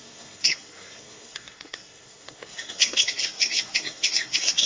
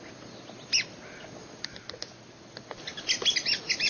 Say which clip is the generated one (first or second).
first